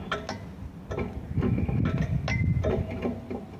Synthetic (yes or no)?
no